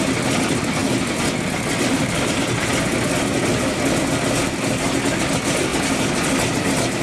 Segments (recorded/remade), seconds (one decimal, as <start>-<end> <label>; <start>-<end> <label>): 0.0-7.0 recorded